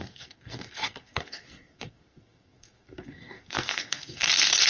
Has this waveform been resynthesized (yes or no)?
yes